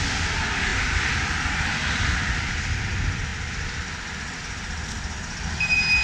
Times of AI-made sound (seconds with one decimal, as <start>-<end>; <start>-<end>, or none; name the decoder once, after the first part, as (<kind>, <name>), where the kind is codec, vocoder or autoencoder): none